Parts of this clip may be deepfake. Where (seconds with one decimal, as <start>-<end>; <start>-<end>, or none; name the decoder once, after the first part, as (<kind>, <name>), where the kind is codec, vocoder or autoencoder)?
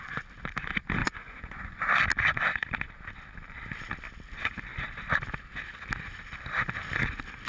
1.0-1.9 (vocoder, Vocos)